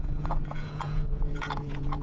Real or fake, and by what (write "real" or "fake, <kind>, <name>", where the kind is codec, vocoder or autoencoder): fake, vocoder, Vocos